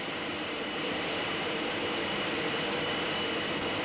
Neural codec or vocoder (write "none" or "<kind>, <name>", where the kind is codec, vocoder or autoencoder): none